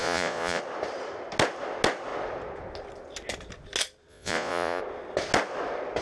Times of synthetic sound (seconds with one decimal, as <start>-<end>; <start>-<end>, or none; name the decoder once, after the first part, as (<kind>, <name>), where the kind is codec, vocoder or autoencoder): 0.0-0.6 (vocoder, Vocos); 4.1-4.8